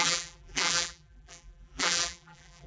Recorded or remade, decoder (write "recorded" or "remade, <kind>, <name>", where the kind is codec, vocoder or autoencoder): remade, vocoder, BigVGAN v2